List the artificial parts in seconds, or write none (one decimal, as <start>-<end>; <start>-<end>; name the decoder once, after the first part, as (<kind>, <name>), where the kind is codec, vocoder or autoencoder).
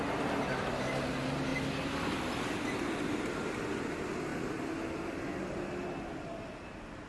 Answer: none